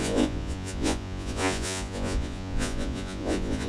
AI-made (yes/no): yes